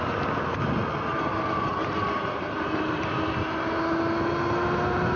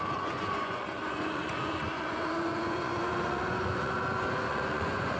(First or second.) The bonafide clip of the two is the first